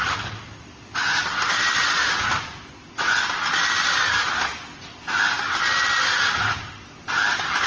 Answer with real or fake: real